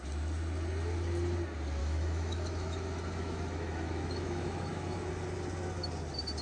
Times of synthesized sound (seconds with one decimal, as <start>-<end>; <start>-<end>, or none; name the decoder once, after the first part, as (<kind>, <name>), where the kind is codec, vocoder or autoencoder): 1.8-5.1 (autoencoder, DAC-VAE)